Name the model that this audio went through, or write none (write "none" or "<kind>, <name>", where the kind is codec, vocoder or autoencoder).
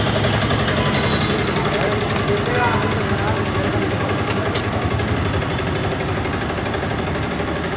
none